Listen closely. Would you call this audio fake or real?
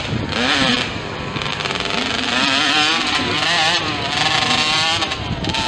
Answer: fake